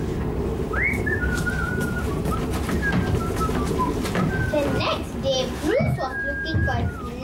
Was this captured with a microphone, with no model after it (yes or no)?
yes